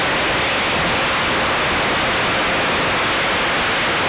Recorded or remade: recorded